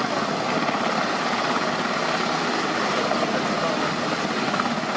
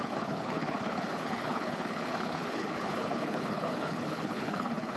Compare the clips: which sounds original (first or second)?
first